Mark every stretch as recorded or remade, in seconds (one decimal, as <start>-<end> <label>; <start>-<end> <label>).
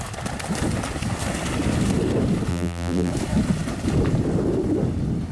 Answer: 0.0-2.5 recorded; 2.5-3.1 remade; 3.1-5.3 recorded